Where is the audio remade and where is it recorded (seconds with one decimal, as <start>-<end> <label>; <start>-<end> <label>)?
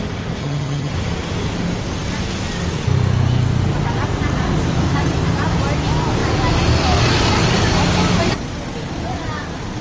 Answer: 0.0-0.4 recorded; 0.4-0.9 remade; 0.9-9.8 recorded